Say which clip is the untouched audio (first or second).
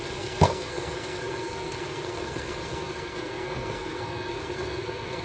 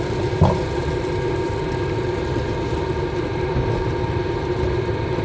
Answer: second